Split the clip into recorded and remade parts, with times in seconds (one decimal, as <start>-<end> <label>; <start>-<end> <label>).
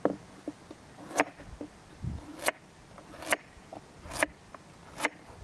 0.0-5.4 recorded